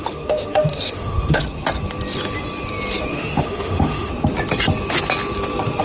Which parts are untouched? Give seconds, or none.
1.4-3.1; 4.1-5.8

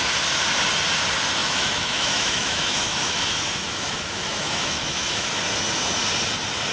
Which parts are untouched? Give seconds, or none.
0.0-1.4; 5.3-6.7

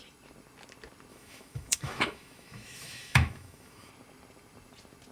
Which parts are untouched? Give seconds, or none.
0.0-1.1; 3.9-5.1

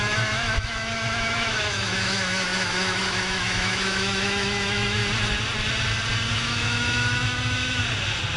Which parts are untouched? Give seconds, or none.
5.0-6.3; 7.8-8.4

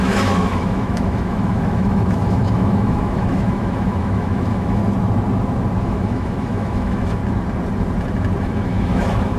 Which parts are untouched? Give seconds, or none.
4.8-5.8; 7.2-8.4

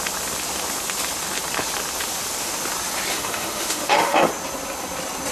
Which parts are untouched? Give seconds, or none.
0.0-3.1; 4.3-5.3

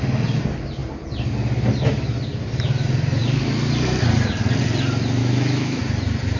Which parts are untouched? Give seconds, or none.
0.0-5.2; 5.8-6.4

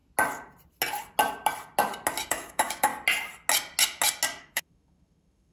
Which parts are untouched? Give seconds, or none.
0.0-2.3; 2.9-4.4